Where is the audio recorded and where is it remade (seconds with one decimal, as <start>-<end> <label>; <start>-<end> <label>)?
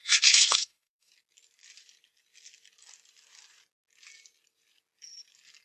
0.0-1.1 remade; 1.1-5.6 recorded